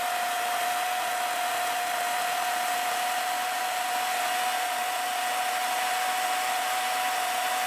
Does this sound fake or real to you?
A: real